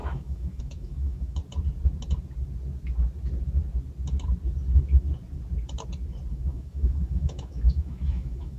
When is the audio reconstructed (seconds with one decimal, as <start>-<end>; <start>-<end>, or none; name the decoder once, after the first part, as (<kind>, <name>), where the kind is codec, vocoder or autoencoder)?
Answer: 0.0-1.4 (autoencoder, DAC-VAE); 6.3-8.6